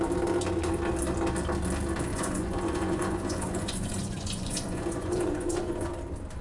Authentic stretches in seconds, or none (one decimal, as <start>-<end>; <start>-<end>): 0.0-2.1; 5.9-6.4